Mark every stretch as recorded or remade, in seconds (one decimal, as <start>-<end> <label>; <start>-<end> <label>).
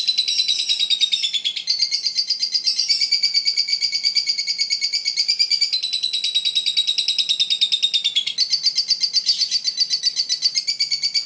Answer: 0.0-3.7 recorded; 3.7-4.4 remade; 4.4-5.0 recorded; 5.0-5.6 remade; 5.6-11.3 recorded